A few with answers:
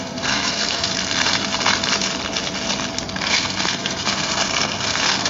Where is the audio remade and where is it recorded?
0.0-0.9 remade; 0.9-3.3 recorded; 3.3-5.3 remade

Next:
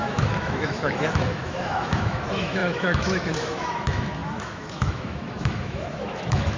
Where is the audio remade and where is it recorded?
0.0-6.6 remade